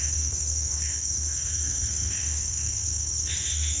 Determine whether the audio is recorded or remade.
remade